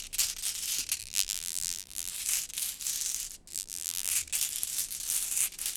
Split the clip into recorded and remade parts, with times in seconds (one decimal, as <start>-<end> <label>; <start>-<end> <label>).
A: 0.0-1.0 recorded; 1.0-2.1 remade; 2.1-3.5 recorded; 3.5-4.1 remade; 4.1-5.8 recorded